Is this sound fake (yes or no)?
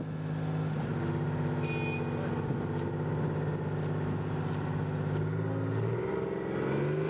no